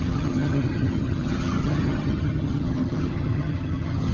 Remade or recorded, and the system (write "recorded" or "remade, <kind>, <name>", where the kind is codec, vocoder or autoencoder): remade, vocoder, HiFi-GAN